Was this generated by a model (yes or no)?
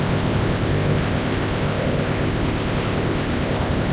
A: yes